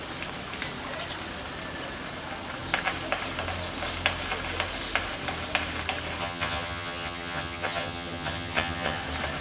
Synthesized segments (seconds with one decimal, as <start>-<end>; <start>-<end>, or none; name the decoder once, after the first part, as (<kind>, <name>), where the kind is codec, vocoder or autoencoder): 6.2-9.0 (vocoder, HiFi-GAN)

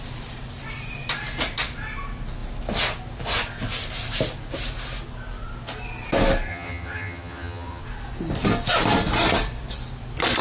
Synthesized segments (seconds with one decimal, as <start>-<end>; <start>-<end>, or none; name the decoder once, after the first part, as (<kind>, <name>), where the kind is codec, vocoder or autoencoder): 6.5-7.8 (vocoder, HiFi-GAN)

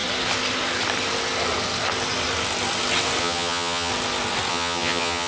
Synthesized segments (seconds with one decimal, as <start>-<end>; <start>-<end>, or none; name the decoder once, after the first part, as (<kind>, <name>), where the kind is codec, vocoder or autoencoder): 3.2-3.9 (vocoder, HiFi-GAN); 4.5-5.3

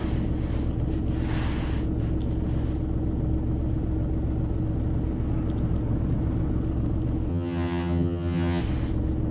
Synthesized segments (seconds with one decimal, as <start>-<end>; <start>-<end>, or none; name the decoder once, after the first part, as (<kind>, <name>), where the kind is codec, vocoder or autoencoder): 7.3-8.6 (vocoder, HiFi-GAN)

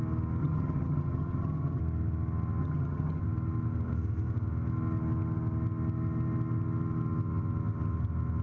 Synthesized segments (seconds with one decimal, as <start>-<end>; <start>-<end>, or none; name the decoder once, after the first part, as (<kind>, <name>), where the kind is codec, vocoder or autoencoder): 0.4-1.8 (vocoder, HiFi-GAN); 2.6-3.2

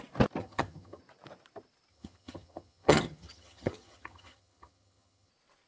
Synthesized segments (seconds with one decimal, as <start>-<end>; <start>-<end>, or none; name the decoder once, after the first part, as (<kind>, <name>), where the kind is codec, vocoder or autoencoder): 0.4-1.0 (vocoder, HiFi-GAN); 1.9-5.3